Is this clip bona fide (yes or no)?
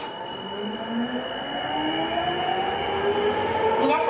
yes